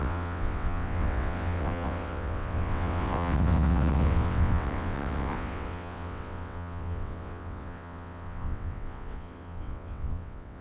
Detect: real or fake fake